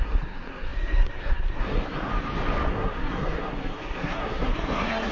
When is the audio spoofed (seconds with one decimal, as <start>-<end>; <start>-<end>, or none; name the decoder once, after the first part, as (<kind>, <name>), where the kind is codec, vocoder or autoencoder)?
0.0-2.1 (codec, SNAC); 2.7-5.1